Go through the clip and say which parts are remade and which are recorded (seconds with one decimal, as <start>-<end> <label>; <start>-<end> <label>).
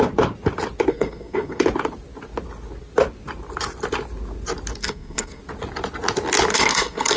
0.0-0.9 recorded; 0.9-1.6 remade; 1.6-4.8 recorded; 4.8-5.4 remade; 5.4-6.5 recorded; 6.5-7.2 remade